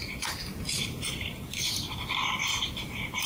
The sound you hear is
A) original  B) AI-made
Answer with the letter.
B